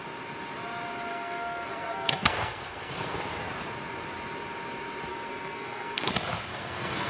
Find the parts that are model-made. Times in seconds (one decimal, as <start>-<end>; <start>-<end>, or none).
1.1-3.2; 5.1-6.1; 6.5-7.1